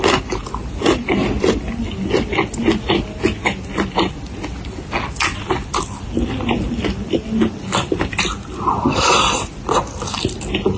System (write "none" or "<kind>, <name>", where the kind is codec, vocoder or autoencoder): none